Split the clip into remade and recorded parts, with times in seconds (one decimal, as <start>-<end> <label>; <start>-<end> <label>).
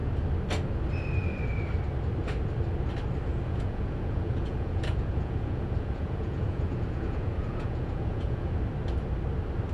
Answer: 0.0-3.3 recorded; 3.3-8.5 remade; 8.5-9.7 recorded